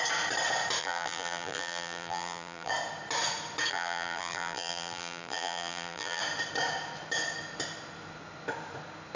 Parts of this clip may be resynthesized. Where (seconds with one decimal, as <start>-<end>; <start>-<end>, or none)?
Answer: 0.8-2.7; 3.7-6.2